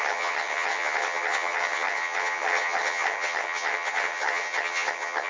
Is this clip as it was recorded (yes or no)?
no